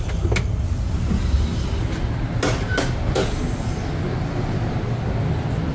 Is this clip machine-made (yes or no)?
no